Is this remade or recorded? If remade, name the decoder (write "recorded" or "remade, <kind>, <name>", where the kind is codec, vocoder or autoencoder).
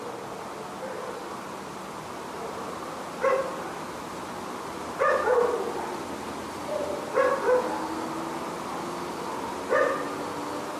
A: recorded